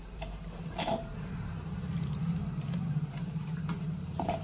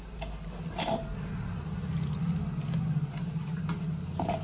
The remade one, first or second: first